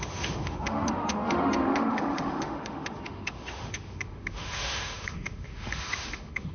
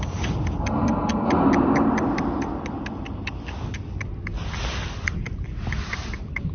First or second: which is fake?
first